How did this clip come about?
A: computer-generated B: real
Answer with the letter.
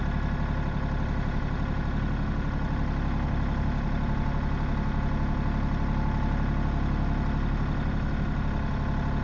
B